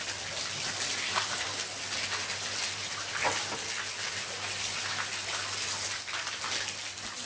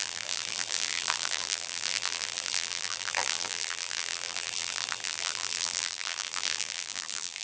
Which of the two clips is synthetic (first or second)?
second